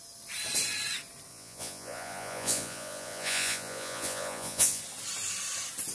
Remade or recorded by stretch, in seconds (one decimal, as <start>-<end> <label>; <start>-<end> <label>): 0.0-1.3 recorded; 1.3-4.8 remade; 4.8-5.9 recorded